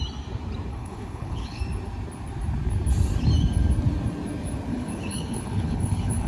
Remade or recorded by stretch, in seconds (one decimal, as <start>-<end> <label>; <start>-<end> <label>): 0.0-0.7 recorded; 0.7-1.6 remade; 1.6-4.7 recorded; 4.7-6.3 remade